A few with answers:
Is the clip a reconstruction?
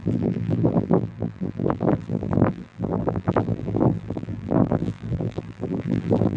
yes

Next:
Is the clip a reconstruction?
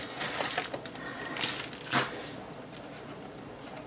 no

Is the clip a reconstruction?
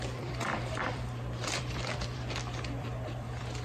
yes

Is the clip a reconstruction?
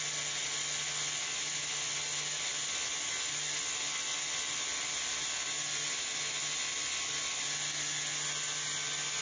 no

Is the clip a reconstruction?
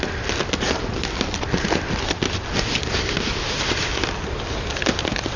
no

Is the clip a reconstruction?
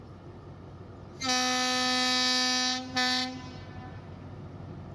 no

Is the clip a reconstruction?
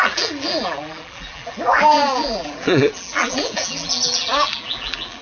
yes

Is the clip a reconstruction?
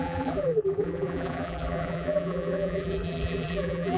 yes